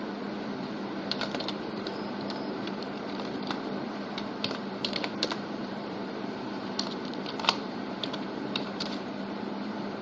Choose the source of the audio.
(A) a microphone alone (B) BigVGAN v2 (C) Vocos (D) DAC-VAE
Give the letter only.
B